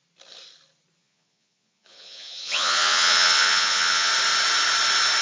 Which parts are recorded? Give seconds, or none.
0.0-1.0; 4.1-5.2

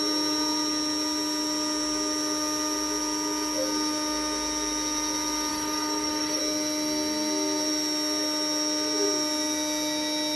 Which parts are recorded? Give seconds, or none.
0.0-5.5; 6.4-10.4